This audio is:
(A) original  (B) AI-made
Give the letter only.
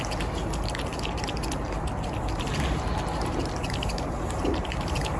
A